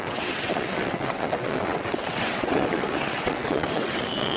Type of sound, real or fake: fake